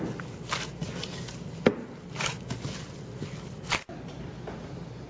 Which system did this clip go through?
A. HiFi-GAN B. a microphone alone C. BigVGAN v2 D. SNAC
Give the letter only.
B